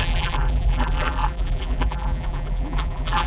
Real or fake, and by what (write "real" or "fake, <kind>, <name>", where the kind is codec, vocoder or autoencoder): fake, vocoder, BigVGAN v2